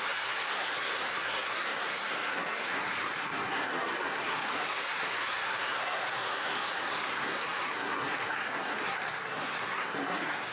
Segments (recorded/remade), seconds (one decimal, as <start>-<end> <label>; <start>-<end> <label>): 0.0-10.5 remade